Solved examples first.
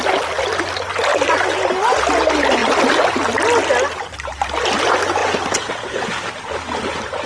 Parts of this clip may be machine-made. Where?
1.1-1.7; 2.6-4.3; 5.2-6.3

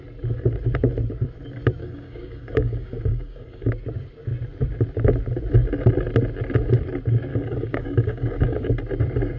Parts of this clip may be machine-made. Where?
1.8-3.7; 7.3-8.7

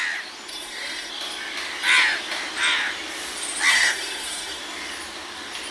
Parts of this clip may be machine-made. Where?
0.5-1.1; 3.7-4.6

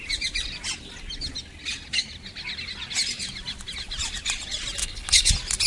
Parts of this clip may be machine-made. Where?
4.8-5.3

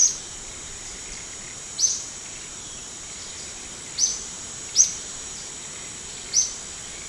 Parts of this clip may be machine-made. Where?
0.0-3.6; 4.1-5.5

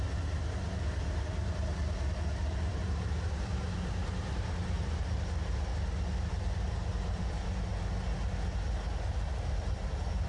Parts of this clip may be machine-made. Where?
0.0-5.7; 6.3-7.7; 8.9-10.3

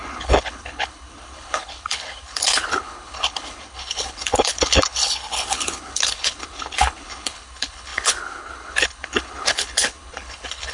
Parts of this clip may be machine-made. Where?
0.0-10.7